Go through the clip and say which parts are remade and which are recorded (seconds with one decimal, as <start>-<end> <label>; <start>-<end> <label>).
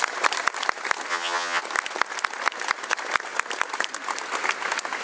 0.0-1.1 recorded; 1.1-1.6 remade; 1.6-5.0 recorded